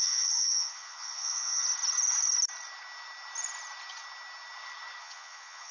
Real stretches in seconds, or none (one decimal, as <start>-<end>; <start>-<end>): 1.6-5.0